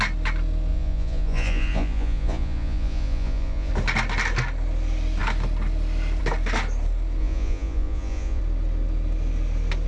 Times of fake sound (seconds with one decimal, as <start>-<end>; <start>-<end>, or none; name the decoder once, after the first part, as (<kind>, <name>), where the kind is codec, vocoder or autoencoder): 0.7-3.7 (vocoder, Vocos); 7.2-8.4